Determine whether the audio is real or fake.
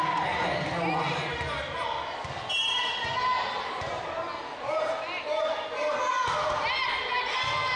real